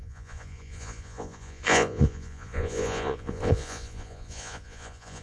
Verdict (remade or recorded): remade